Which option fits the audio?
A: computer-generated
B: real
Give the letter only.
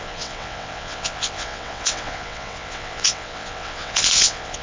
A